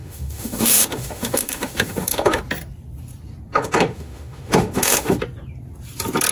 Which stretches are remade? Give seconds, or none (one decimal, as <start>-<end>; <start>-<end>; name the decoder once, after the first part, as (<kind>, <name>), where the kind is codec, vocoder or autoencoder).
0.0-2.4 (autoencoder, DAC-VAE); 3.5-5.2